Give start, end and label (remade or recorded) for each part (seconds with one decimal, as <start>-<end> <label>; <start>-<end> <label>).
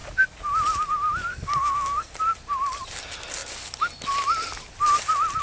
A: 0.0-1.3 recorded; 1.3-2.1 remade; 2.1-5.4 recorded